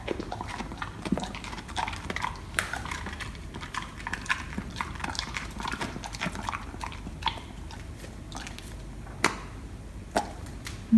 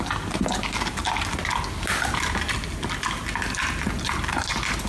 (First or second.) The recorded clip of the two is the second